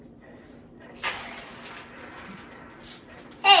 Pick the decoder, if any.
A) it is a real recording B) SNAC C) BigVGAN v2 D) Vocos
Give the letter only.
A